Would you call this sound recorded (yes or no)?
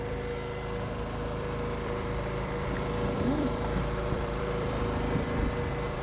no